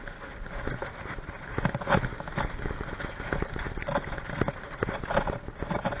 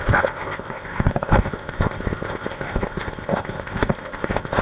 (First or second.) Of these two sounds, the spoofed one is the second